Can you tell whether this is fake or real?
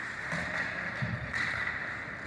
real